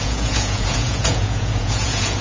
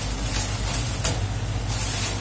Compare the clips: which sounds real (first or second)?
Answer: second